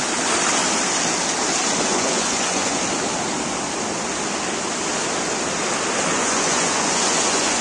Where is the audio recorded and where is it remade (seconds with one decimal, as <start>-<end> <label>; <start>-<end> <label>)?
0.0-1.9 recorded; 1.9-2.8 remade; 2.8-6.1 recorded; 6.1-7.6 remade